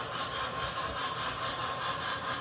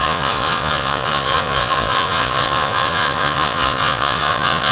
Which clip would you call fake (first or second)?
second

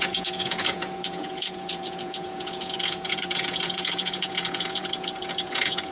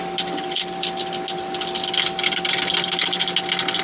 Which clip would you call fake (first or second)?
first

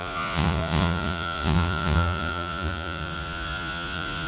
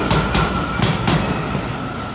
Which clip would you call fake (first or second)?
first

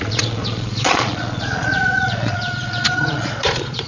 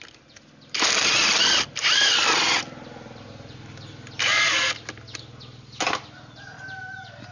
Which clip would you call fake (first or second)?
first